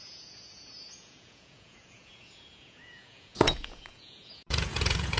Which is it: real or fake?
fake